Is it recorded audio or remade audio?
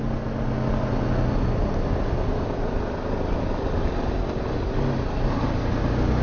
recorded